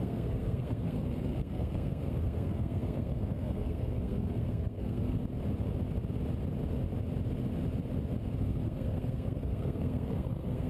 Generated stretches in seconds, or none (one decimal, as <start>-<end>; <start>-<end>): 0.0-5.2; 8.4-10.7